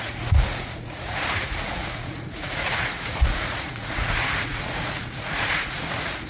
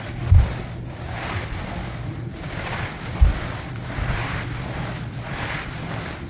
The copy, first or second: first